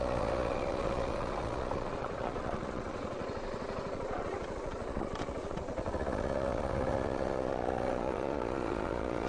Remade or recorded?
remade